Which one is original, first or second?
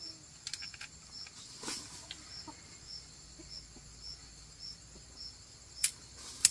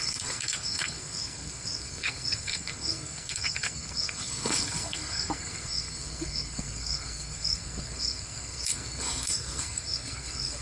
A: first